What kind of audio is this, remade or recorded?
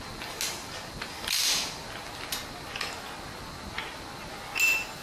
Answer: recorded